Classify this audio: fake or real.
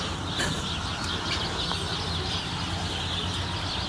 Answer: real